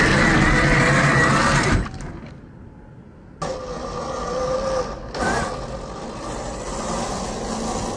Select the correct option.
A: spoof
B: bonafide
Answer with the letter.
B